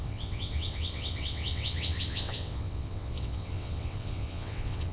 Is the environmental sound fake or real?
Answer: fake